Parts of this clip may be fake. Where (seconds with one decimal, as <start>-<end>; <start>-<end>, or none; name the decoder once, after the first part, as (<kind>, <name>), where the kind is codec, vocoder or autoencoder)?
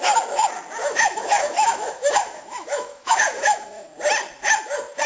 0.8-3.9 (autoencoder, DAC-VAE)